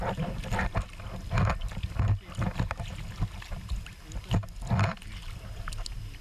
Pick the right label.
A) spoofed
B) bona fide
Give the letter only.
B